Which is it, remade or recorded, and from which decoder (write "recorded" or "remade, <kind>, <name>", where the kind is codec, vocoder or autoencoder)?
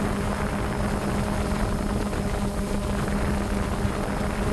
recorded